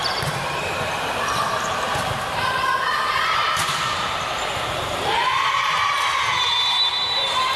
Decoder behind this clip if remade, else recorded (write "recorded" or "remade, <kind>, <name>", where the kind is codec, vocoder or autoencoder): remade, vocoder, BigVGAN v2